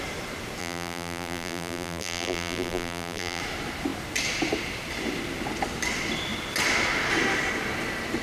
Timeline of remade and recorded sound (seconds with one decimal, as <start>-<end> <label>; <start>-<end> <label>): 0.0-0.6 recorded; 0.6-3.4 remade; 3.4-8.2 recorded